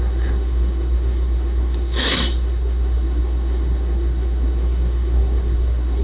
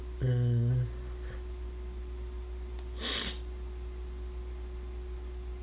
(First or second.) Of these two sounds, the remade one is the first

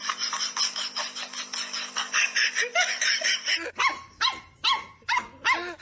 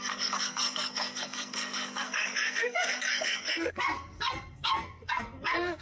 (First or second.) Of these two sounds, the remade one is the second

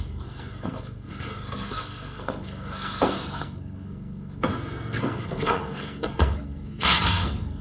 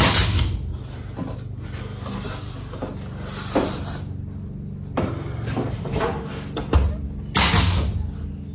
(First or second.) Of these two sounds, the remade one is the first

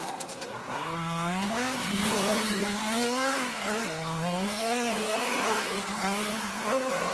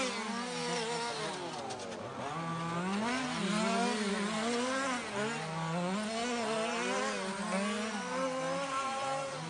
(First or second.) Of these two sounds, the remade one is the first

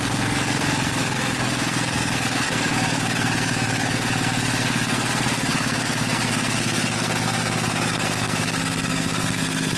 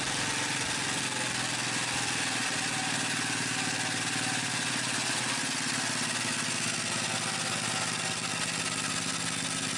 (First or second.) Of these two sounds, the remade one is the first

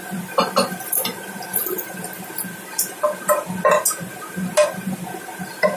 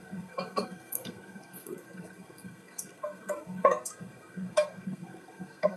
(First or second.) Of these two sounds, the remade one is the second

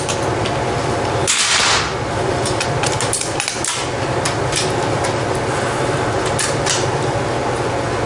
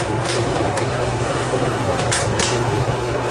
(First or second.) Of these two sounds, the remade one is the second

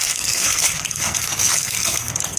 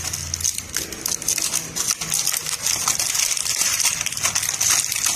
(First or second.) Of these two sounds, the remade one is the first